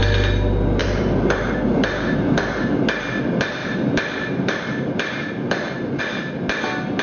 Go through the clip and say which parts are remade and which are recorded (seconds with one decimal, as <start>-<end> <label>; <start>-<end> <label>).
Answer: 0.0-0.8 recorded; 0.8-2.8 remade; 2.8-3.6 recorded; 3.6-6.0 remade; 6.0-7.0 recorded

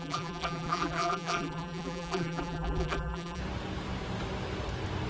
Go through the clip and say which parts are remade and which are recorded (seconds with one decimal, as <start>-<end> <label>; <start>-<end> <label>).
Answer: 0.0-3.4 remade; 3.4-5.1 recorded

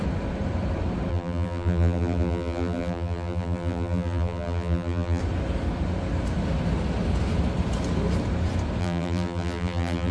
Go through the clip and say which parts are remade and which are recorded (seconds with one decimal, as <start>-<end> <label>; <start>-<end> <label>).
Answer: 0.0-1.1 recorded; 1.1-5.2 remade; 5.2-8.8 recorded; 8.8-10.1 remade

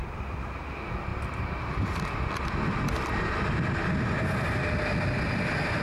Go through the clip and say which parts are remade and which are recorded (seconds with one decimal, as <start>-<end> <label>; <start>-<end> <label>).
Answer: 0.0-5.8 recorded

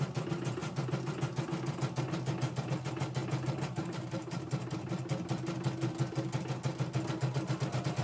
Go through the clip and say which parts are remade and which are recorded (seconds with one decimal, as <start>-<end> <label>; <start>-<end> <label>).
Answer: 0.0-3.2 recorded; 3.2-4.9 remade; 4.9-8.0 recorded

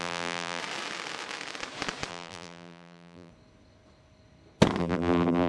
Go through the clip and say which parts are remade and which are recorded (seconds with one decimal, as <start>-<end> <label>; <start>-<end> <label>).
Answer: 0.0-0.6 remade; 0.6-2.1 recorded; 2.1-3.3 remade; 3.3-4.8 recorded; 4.8-5.5 remade

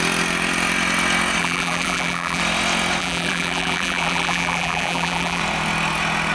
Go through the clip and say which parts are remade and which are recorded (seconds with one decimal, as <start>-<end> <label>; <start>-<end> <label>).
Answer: 0.0-1.4 recorded; 1.4-2.4 remade; 2.4-3.0 recorded; 3.0-5.4 remade; 5.4-6.3 recorded